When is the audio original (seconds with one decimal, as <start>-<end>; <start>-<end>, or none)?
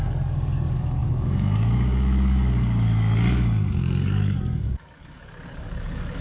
none